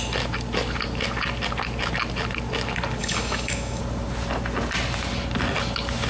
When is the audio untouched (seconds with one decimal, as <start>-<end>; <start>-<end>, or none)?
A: 0.0-3.0; 3.8-6.1